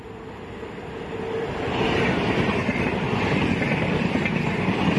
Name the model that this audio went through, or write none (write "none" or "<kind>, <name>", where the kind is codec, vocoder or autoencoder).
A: vocoder, BigVGAN v2